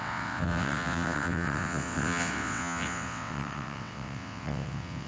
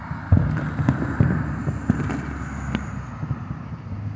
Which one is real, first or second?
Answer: second